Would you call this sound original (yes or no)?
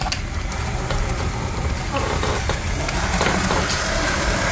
no